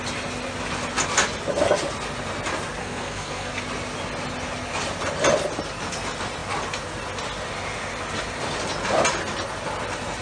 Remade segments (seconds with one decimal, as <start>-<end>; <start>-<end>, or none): 2.8-3.6